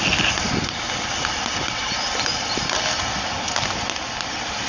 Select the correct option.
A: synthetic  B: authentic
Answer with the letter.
B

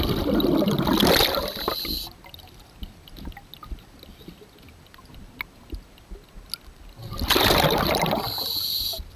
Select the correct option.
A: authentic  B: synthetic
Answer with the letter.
A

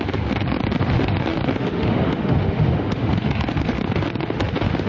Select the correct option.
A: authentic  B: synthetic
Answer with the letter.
B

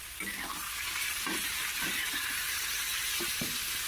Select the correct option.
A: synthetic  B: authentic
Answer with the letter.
B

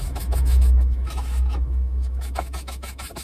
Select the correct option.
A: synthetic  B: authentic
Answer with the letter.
A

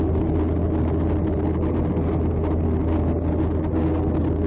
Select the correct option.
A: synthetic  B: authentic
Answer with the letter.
B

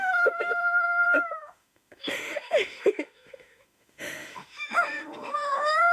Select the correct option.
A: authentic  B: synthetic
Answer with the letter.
B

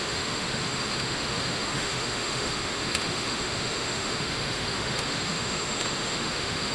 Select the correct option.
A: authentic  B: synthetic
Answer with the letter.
B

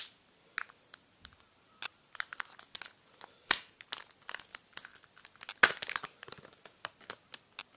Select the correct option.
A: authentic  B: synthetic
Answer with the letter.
A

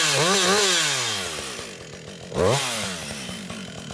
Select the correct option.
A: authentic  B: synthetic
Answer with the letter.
A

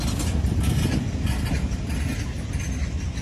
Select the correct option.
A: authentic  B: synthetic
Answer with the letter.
A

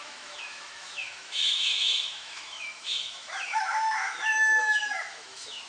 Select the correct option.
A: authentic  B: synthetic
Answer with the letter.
B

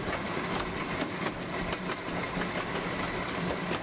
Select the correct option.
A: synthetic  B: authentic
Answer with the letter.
B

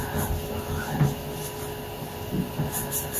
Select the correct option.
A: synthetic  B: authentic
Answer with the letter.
B